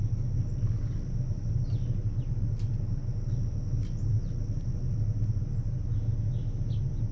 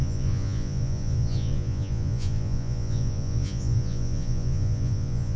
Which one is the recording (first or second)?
first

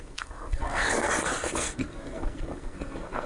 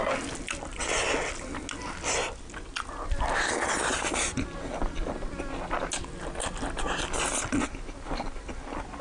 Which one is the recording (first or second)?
second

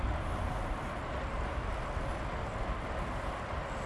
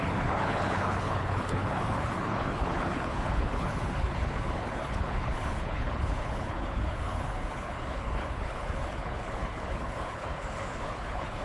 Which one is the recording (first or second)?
first